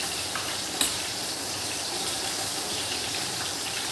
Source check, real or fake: fake